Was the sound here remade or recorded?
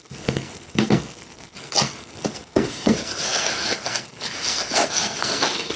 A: remade